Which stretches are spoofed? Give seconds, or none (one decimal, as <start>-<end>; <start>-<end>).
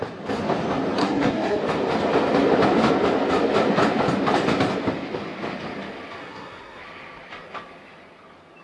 1.0-1.6; 6.2-6.8